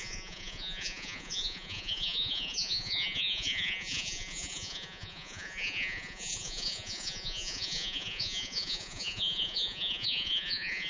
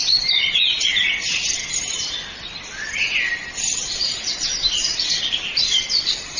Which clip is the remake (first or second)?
first